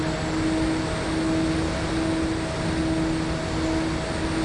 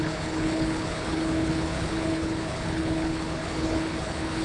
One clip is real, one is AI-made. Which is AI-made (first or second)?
second